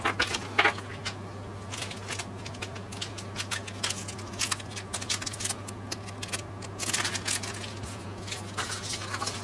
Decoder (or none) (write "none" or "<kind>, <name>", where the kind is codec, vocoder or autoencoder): none